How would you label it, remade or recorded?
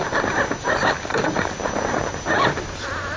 recorded